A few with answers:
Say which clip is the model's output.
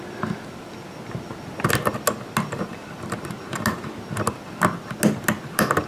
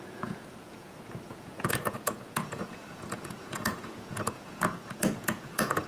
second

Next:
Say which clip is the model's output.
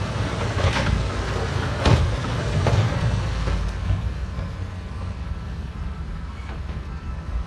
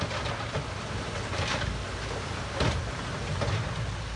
first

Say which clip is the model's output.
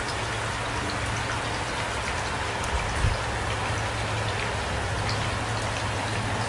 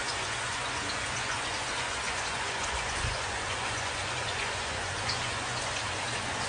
second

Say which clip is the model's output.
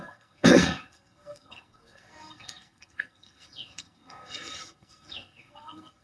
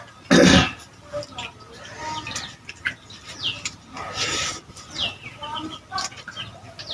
first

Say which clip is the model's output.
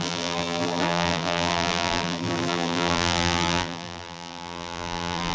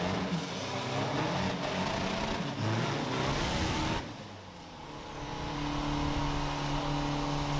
first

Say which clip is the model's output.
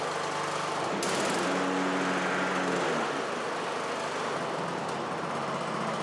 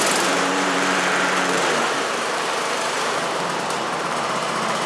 second